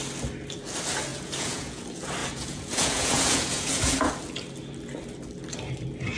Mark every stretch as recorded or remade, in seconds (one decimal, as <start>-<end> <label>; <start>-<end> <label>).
0.0-1.1 recorded; 1.1-1.8 remade; 1.8-2.2 recorded; 2.2-4.1 remade; 4.1-6.2 recorded